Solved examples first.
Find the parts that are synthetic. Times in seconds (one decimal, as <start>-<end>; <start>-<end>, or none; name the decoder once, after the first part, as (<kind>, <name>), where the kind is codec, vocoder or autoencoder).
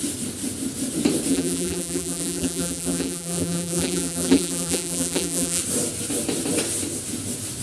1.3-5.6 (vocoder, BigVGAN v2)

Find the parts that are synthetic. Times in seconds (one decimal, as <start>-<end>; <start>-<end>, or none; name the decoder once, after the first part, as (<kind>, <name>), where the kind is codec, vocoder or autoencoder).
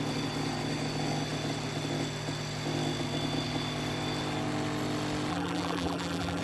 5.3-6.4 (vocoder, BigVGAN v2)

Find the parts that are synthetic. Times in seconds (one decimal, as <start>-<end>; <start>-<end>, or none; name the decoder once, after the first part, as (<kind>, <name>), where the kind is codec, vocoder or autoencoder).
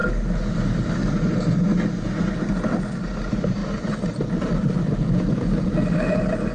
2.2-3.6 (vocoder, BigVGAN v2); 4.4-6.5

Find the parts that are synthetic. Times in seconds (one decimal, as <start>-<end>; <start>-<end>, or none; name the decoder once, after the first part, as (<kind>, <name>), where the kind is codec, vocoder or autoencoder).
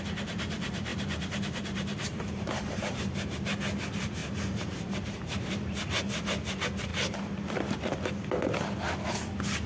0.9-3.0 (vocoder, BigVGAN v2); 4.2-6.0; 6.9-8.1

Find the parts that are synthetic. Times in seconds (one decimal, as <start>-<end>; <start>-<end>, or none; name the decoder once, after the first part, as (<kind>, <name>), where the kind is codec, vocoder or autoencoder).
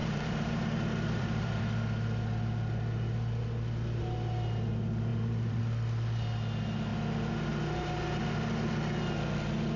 0.0-1.6 (vocoder, BigVGAN v2); 5.1-5.6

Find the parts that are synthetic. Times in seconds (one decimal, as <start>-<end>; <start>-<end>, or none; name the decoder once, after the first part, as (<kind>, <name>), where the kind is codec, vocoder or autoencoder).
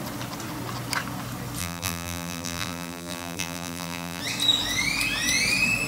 1.6-4.2 (vocoder, BigVGAN v2)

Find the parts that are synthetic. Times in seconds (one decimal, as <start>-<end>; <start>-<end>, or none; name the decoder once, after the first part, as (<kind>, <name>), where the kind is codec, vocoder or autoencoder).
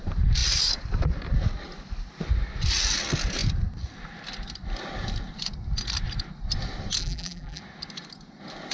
7.0-7.6 (vocoder, BigVGAN v2)